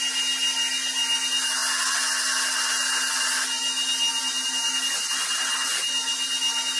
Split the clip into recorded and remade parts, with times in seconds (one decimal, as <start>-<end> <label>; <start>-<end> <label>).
0.0-6.8 recorded